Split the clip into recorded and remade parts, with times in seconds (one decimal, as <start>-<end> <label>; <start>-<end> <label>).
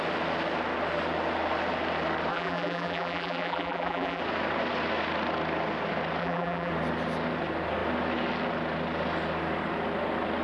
0.0-2.3 recorded; 2.3-4.2 remade; 4.2-6.2 recorded; 6.2-6.7 remade; 6.7-10.4 recorded